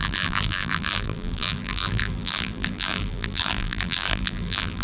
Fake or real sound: fake